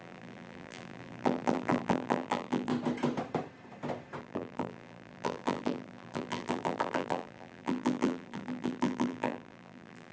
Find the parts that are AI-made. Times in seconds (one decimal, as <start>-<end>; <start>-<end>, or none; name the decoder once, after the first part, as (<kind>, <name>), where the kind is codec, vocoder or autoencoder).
0.0-2.7 (vocoder, BigVGAN v2); 4.2-10.1